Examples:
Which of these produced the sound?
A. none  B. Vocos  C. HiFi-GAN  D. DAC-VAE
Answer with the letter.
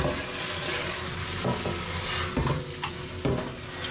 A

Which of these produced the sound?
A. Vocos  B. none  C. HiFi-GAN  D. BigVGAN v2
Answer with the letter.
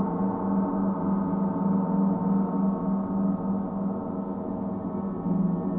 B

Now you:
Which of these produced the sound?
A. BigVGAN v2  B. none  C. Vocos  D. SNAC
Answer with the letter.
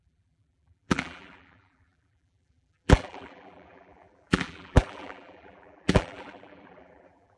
A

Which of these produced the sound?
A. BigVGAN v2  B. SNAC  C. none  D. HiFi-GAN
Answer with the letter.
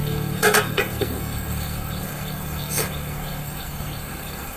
B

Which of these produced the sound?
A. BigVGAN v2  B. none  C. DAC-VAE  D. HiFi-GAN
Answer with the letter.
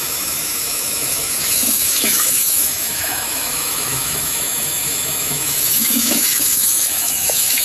C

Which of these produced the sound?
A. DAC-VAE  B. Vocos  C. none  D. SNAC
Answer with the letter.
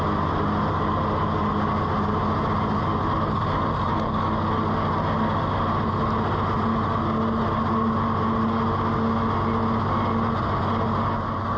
C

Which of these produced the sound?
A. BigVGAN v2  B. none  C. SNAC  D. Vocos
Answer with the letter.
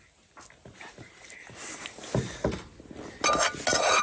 B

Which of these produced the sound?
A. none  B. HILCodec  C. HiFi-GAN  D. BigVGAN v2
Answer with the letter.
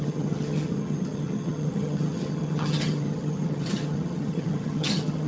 C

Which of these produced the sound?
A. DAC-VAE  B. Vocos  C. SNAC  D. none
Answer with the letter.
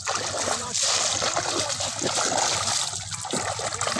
D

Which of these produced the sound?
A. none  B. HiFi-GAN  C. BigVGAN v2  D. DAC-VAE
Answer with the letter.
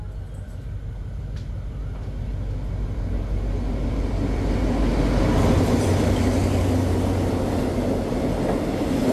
A